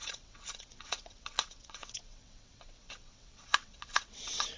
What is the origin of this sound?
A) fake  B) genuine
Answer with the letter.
A